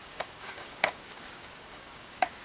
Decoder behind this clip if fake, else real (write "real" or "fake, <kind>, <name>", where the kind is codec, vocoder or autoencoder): fake, codec, DAC